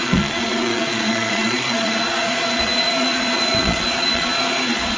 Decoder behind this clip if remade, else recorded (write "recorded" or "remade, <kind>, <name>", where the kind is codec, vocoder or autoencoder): remade, vocoder, Vocos